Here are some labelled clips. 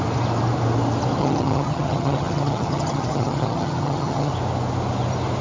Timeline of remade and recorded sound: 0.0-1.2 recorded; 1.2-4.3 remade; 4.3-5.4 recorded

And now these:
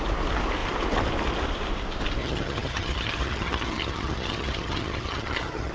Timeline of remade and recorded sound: 0.0-2.2 recorded; 2.2-5.7 remade

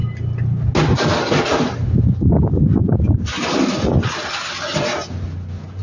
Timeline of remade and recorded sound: 0.0-5.8 recorded